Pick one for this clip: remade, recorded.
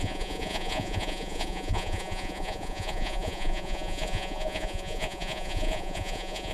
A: remade